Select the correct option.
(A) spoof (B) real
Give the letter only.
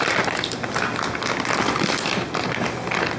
B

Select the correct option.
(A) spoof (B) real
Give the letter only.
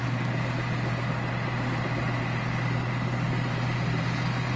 B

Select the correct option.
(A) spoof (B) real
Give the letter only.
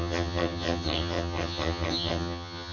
A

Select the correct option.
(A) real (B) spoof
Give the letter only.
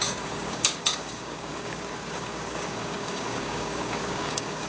B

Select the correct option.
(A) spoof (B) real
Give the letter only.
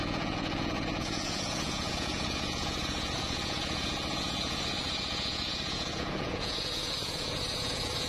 A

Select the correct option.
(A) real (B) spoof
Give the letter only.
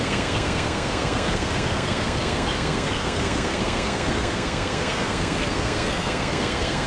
B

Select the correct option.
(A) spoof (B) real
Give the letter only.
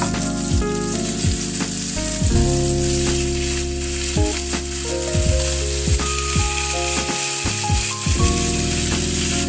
B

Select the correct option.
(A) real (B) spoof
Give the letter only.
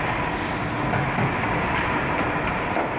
A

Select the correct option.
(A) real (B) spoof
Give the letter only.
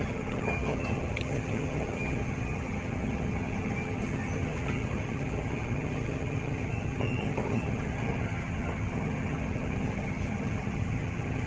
B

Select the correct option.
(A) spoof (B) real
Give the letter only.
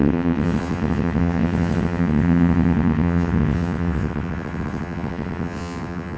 A